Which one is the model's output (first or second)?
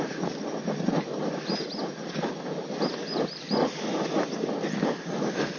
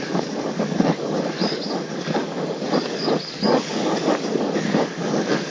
second